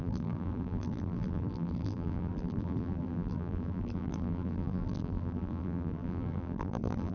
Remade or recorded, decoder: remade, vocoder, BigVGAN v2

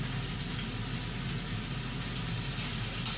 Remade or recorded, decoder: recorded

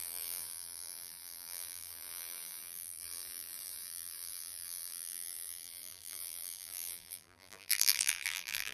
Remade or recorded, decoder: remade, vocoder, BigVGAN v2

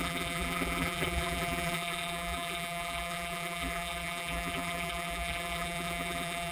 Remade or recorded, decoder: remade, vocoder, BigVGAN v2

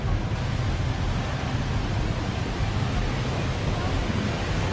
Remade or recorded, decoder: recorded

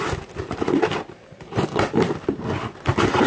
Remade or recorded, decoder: recorded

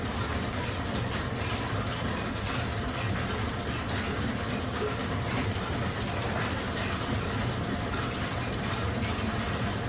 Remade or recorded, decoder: recorded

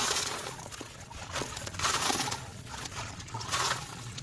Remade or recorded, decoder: remade, vocoder, Vocos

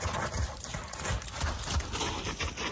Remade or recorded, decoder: recorded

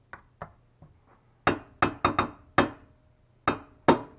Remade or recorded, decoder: recorded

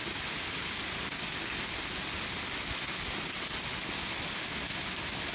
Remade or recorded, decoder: recorded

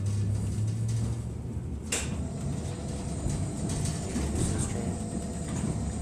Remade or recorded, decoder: recorded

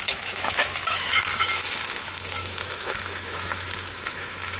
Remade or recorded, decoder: remade, autoencoder, DAC-VAE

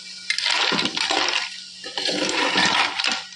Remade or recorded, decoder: remade, vocoder, BigVGAN v2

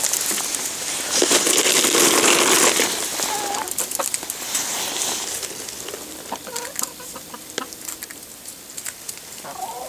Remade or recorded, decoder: recorded